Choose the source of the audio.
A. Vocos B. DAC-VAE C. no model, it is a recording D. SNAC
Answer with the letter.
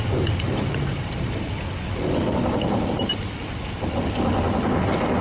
C